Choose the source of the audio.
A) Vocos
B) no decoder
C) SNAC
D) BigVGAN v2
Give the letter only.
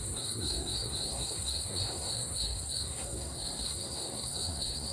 C